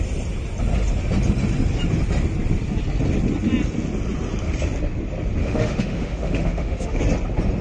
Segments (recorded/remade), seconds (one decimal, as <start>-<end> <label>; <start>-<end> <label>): 0.0-5.4 recorded; 5.4-7.0 remade; 7.0-7.6 recorded